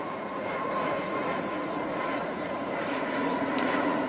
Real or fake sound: fake